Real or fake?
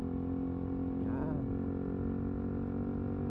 real